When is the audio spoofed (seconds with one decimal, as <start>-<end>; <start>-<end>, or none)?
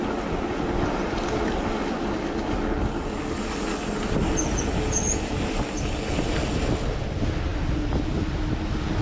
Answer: none